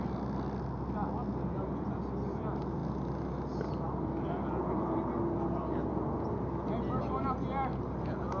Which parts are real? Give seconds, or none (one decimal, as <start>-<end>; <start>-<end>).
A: 0.0-8.4